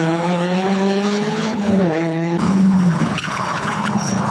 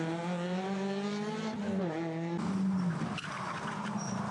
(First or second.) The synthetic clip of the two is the first